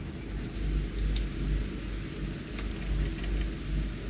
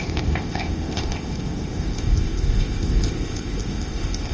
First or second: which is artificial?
second